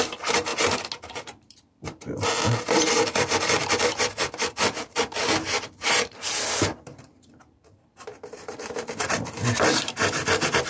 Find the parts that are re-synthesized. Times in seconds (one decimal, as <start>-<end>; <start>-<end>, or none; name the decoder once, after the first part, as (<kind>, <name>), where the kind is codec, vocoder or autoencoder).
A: 0.0-0.5 (vocoder, BigVGAN v2); 1.1-3.6; 4.5-10.7